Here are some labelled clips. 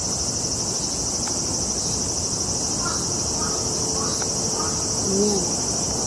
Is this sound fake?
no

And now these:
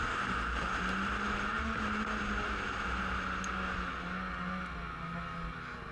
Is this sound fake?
no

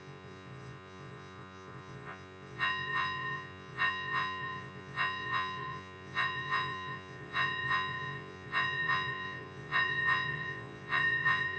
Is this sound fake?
yes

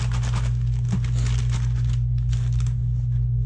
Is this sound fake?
no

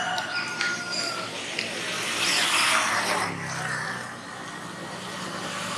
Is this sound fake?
no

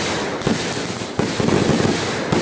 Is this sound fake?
no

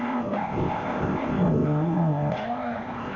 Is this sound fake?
yes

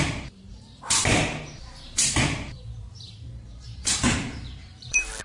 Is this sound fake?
yes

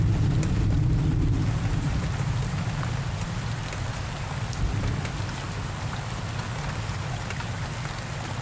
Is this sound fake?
no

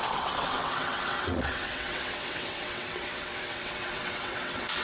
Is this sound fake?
yes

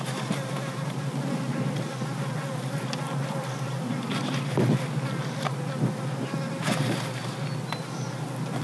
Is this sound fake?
no